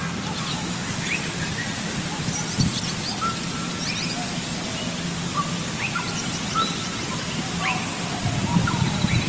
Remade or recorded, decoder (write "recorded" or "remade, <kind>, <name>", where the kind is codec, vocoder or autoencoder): remade, vocoder, BigVGAN v2